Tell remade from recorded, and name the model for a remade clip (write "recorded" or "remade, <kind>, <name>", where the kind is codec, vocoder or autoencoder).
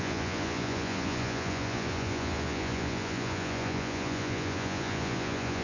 remade, vocoder, Vocos